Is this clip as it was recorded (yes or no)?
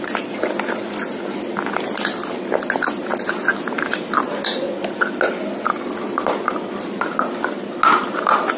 yes